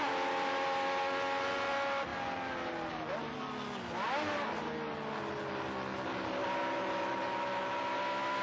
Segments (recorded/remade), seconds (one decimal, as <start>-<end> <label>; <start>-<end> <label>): 0.0-8.4 recorded